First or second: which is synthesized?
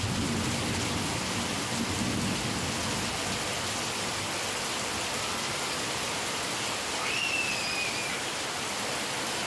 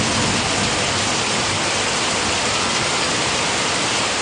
second